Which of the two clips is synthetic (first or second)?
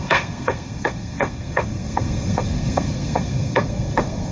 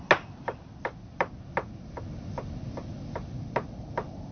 first